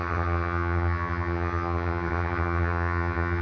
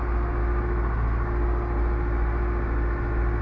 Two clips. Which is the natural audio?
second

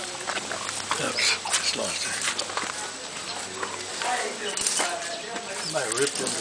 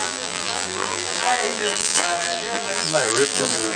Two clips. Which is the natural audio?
first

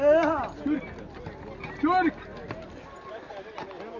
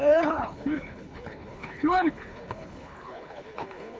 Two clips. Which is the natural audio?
first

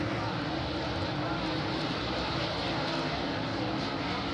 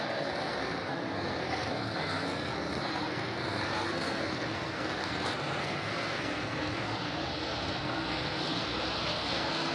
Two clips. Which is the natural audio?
first